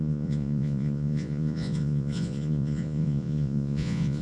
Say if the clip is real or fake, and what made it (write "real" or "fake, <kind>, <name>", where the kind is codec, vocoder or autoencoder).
fake, vocoder, Vocos